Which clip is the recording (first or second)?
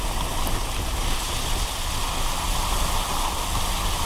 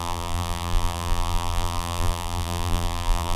first